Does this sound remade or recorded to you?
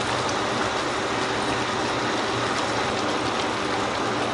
recorded